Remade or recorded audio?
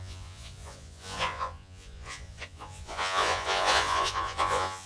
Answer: remade